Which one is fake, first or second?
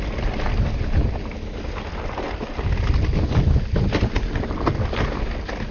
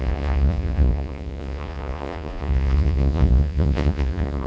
second